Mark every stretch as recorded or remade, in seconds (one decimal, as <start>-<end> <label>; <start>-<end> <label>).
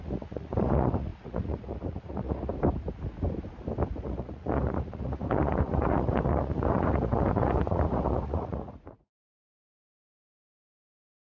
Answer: 0.0-2.5 remade; 2.5-4.0 recorded; 4.0-11.3 remade